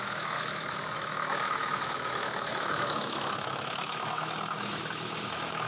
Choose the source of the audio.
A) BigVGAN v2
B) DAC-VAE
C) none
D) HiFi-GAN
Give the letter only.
B